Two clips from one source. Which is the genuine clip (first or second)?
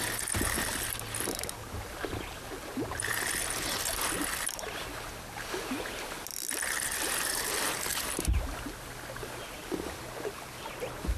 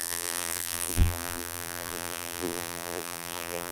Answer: first